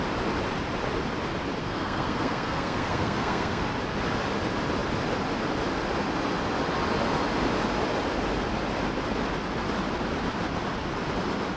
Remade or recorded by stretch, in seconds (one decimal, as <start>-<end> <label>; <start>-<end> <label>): 0.0-1.6 recorded; 1.6-3.6 remade; 3.6-11.6 recorded